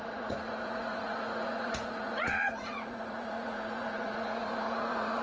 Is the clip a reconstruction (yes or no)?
yes